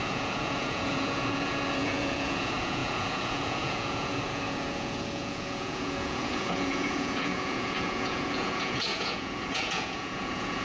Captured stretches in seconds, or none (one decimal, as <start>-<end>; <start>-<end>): none